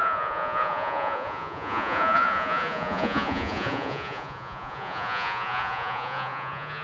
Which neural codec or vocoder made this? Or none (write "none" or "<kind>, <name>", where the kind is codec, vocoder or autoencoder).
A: vocoder, Vocos